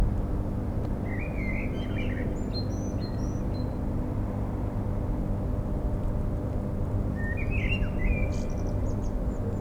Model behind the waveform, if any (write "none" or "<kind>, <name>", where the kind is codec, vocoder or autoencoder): none